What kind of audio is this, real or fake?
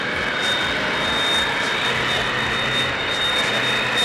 real